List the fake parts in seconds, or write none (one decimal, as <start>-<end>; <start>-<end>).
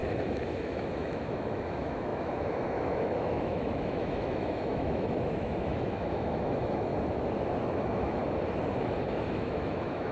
0.0-6.9; 7.8-8.2; 9.3-10.1